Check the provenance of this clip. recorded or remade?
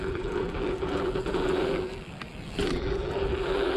remade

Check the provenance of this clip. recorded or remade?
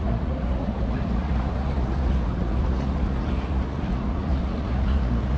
remade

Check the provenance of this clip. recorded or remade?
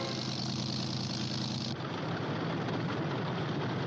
recorded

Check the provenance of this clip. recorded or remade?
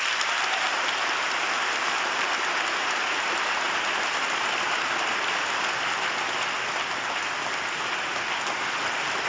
recorded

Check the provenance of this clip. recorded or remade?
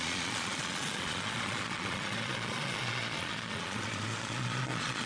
remade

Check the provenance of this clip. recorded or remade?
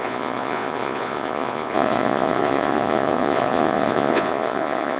remade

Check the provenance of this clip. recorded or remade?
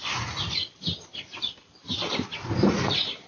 recorded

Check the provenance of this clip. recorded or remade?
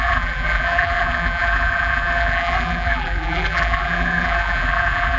remade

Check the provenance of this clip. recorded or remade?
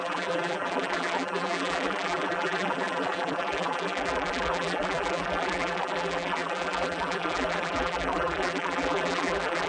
remade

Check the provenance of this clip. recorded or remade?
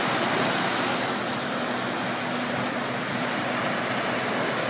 recorded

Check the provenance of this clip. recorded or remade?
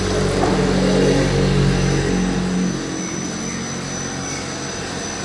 recorded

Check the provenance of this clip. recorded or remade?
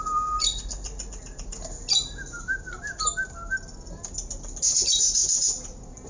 recorded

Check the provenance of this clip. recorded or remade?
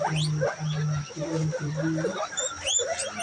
recorded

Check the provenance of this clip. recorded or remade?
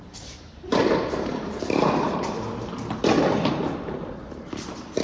recorded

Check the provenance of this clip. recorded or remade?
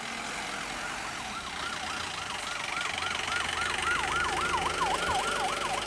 recorded